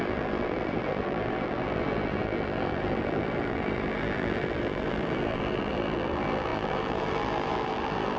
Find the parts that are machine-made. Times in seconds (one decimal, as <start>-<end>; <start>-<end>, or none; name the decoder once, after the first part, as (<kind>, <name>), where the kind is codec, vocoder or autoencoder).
0.0-8.2 (vocoder, BigVGAN v2)